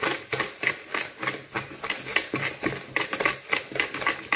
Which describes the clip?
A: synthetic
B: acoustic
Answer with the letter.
B